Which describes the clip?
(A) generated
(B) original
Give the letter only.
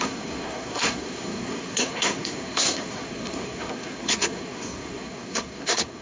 A